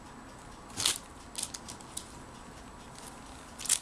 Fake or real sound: real